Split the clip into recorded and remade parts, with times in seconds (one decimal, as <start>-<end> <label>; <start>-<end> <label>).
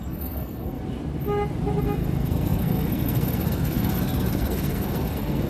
0.0-0.8 remade; 0.8-1.8 recorded; 1.8-5.5 remade